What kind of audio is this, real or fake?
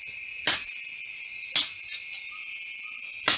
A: real